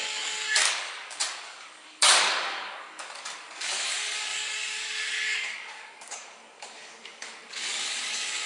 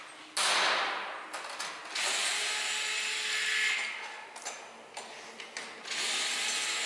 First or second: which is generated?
first